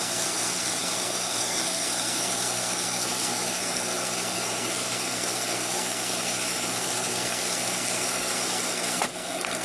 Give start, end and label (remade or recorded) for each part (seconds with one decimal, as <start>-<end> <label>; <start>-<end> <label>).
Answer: 0.0-9.6 remade